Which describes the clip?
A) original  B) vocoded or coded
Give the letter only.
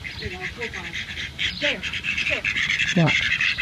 B